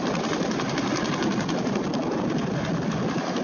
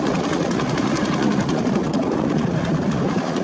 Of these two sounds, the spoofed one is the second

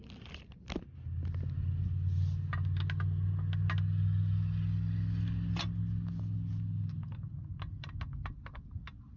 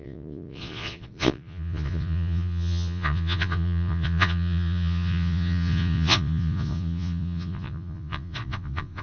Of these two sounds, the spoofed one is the second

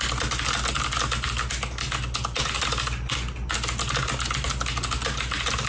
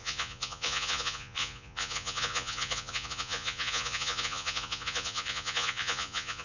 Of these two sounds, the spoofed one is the second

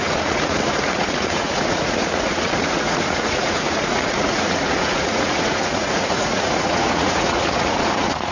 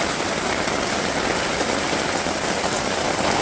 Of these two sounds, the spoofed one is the first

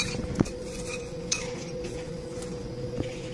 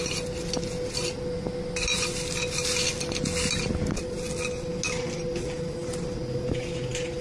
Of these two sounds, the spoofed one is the first